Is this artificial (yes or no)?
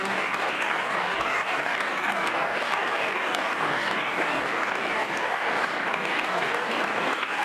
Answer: yes